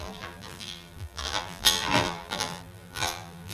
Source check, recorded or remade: remade